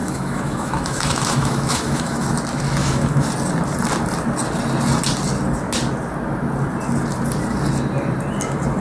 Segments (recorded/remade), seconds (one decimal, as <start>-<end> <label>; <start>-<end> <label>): 0.0-2.3 remade; 2.3-2.8 recorded; 2.8-3.3 remade; 3.3-8.8 recorded